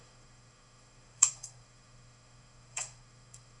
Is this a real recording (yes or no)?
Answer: no